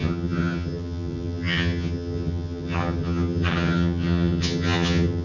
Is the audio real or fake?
fake